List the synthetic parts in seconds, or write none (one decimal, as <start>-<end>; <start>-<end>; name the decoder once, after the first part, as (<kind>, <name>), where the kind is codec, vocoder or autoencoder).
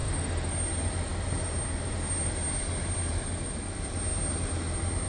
0.0-0.5 (autoencoder, DAC-VAE)